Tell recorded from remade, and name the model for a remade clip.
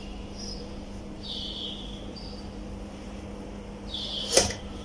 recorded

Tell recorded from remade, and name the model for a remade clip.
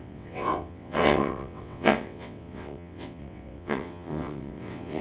remade, vocoder, WaveNeXt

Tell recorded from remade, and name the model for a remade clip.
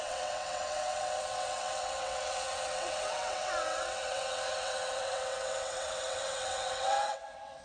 remade, vocoder, WaveNeXt